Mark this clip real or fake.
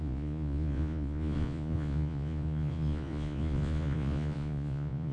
fake